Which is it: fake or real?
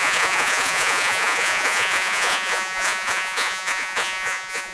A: fake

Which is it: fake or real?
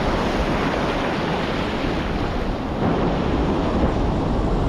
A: real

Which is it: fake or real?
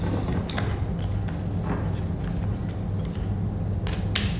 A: real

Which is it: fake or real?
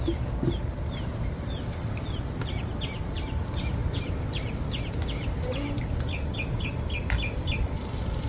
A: real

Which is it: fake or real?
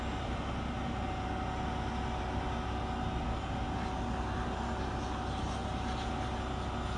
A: real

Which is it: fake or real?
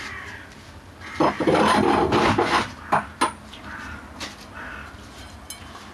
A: real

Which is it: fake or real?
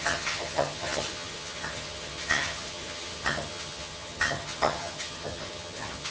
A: fake